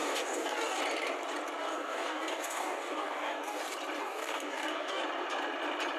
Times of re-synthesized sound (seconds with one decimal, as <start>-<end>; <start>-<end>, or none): 0.0-0.8; 1.6-3.6; 4.0-5.0